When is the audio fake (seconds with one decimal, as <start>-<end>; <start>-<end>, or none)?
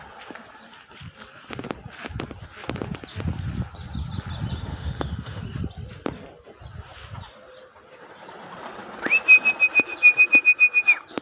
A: 4.7-5.4